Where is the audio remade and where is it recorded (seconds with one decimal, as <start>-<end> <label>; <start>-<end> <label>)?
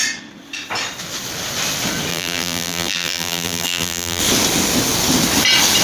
0.0-2.1 recorded; 2.1-4.2 remade; 4.2-5.8 recorded